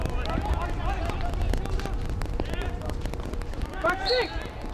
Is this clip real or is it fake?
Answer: real